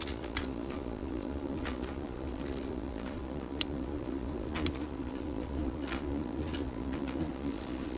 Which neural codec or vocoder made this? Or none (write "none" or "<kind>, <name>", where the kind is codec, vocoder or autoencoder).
vocoder, Vocos